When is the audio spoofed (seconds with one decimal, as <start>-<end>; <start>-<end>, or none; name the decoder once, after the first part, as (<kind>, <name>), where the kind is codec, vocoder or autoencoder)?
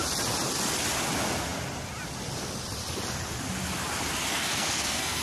4.3-5.2 (codec, SNAC)